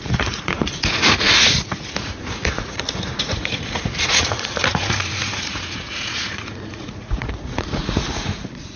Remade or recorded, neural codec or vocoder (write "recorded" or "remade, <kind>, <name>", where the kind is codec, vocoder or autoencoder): remade, vocoder, Vocos